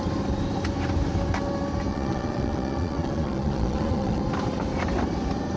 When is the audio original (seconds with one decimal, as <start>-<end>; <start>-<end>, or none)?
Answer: 0.0-1.9; 4.2-5.6

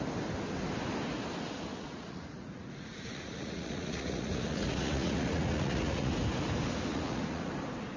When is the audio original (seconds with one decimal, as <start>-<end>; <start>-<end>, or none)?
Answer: 0.0-1.7; 6.1-6.9; 7.5-8.0

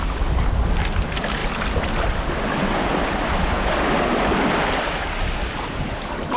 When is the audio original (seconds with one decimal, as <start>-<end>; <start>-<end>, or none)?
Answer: 0.0-6.4

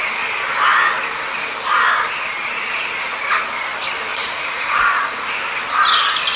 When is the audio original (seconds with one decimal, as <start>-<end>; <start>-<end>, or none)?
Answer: 0.0-4.1; 5.3-6.4

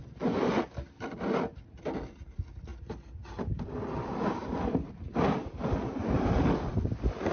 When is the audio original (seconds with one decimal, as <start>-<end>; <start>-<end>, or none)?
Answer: 0.0-7.3

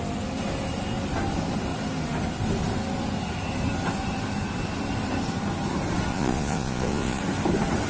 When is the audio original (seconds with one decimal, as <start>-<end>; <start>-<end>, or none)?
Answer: 0.0-6.1; 7.2-7.9